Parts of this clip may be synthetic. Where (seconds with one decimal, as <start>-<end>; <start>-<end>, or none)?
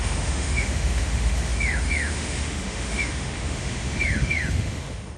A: 0.0-5.2